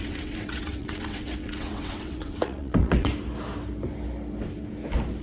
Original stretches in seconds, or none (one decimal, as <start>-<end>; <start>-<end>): 3.1-5.2